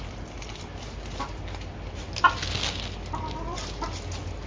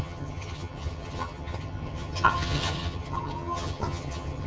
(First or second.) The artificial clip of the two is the second